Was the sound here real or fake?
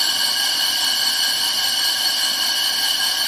fake